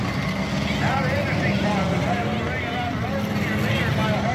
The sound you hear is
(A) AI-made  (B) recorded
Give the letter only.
B